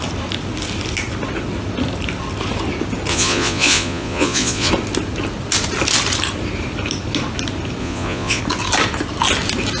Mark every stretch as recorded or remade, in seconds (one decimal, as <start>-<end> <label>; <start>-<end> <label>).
0.0-3.1 recorded; 3.1-4.7 remade; 4.7-7.8 recorded; 7.8-8.4 remade; 8.4-9.8 recorded

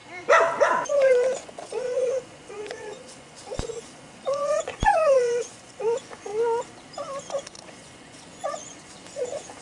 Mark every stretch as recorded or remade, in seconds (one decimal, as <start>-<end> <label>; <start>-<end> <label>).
0.0-0.9 recorded; 0.9-6.3 remade; 6.3-7.2 recorded; 7.2-9.6 remade

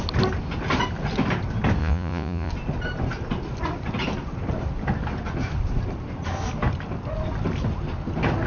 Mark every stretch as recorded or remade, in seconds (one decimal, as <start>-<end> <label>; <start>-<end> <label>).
0.0-1.8 recorded; 1.8-2.5 remade; 2.5-8.5 recorded

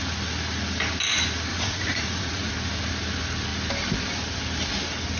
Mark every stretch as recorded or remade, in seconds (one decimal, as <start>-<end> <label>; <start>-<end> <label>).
0.0-1.5 recorded; 1.5-2.5 remade; 2.5-5.2 recorded